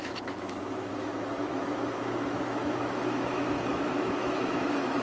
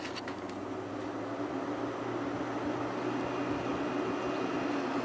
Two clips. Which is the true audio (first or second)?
second